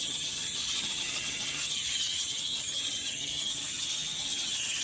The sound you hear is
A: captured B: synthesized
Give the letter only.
B